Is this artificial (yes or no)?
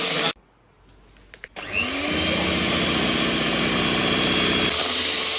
no